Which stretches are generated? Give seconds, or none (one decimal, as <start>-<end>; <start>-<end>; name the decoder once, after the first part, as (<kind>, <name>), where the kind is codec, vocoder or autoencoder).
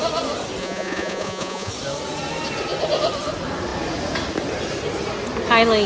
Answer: 0.6-1.7 (vocoder, Vocos)